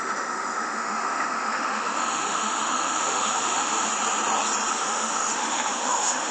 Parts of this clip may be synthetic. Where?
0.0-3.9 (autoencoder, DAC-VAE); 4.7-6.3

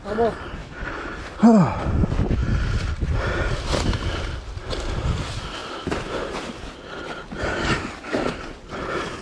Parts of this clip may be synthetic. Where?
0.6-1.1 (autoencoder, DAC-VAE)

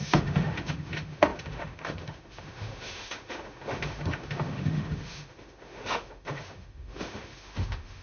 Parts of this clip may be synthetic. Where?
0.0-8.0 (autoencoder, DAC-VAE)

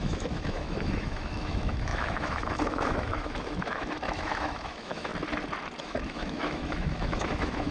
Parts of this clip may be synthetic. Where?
0.0-5.1 (autoencoder, DAC-VAE); 5.8-7.7

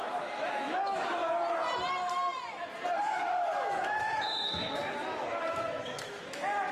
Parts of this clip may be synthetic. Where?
0.0-1.2 (autoencoder, DAC-VAE); 3.0-6.7